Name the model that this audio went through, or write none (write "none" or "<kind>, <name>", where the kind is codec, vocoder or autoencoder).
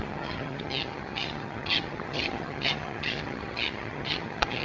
vocoder, HiFi-GAN